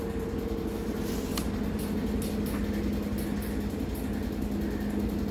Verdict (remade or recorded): recorded